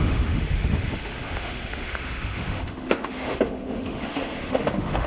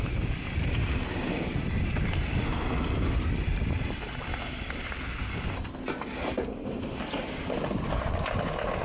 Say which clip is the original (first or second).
second